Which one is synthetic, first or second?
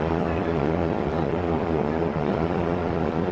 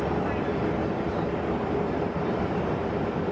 first